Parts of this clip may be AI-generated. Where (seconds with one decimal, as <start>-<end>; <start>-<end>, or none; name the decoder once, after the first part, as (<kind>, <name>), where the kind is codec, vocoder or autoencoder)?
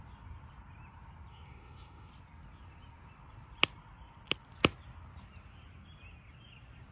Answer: 1.3-2.1 (autoencoder, DAC-VAE)